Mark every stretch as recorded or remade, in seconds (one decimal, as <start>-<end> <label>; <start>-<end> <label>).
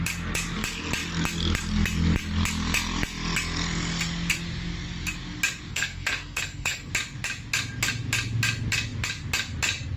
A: 0.0-5.7 recorded; 5.7-6.9 remade; 6.9-10.0 recorded